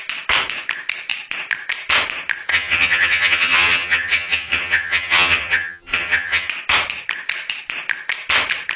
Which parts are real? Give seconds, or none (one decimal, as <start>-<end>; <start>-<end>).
0.0-2.5; 6.5-8.8